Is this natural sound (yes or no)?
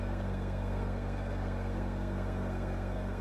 no